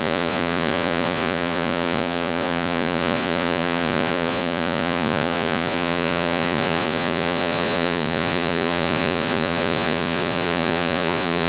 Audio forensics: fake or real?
fake